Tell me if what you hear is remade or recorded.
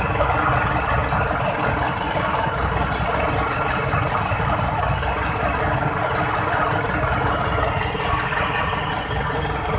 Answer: recorded